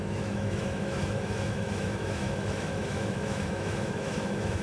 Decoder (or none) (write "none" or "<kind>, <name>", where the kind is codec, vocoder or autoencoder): autoencoder, DAC-VAE